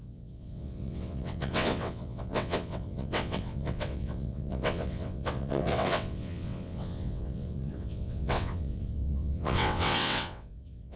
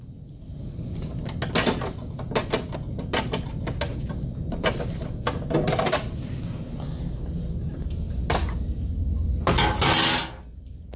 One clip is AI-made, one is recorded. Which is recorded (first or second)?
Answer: second